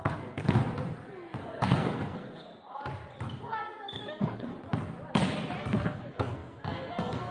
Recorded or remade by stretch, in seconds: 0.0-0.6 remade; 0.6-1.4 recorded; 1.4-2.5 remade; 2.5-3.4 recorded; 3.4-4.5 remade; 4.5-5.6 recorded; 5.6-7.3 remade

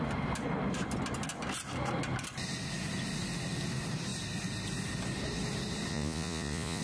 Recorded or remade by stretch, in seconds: 0.0-5.9 recorded; 5.9-6.8 remade

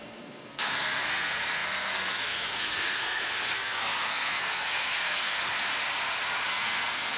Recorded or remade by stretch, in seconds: 0.0-5.4 remade; 5.4-6.5 recorded; 6.5-7.2 remade

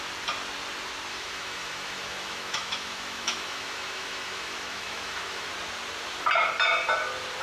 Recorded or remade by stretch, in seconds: 0.0-1.1 recorded; 1.1-5.5 remade; 5.5-7.4 recorded

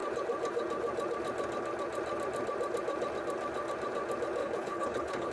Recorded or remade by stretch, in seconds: 0.0-4.4 recorded; 4.4-5.3 remade

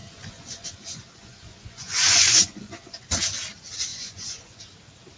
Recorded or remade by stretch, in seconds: 0.0-3.1 remade; 3.1-3.9 recorded; 3.9-4.6 remade; 4.6-5.2 recorded

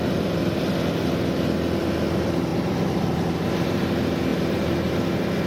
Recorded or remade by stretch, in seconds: 0.0-0.4 remade; 0.4-1.8 recorded; 1.8-5.5 remade

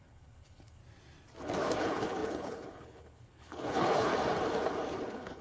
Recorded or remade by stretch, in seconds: 0.0-0.8 remade; 0.8-1.8 recorded; 1.8-4.1 remade; 4.1-5.0 recorded; 5.0-5.4 remade